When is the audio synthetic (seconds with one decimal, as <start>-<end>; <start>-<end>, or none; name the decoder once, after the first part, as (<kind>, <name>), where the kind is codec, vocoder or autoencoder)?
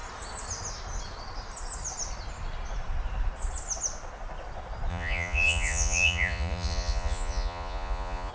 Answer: 4.9-8.3 (vocoder, Vocos)